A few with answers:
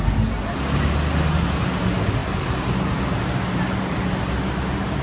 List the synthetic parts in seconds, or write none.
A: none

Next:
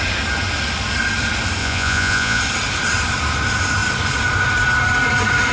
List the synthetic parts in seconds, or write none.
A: 1.6-2.4 (vocoder, Vocos)

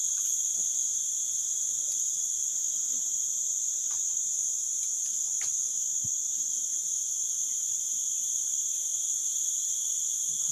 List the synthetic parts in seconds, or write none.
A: none

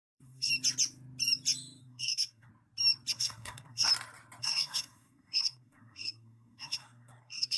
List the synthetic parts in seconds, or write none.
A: 0.0-0.5 (codec, SNAC); 1.8-2.5; 3.1-3.9; 4.4-7.6

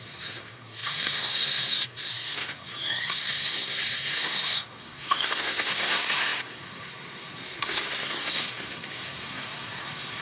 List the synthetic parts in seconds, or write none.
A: 0.0-10.2 (codec, SNAC)

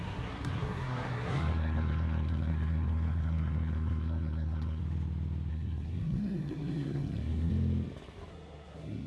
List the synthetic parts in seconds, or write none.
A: 0.0-4.8 (codec, SNAC); 5.5-7.5; 8.3-9.1